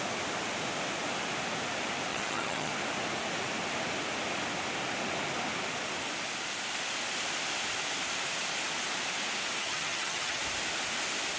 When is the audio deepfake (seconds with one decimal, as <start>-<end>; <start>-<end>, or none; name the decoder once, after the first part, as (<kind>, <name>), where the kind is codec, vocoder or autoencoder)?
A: 2.1-2.7 (vocoder, HiFi-GAN); 9.6-10.4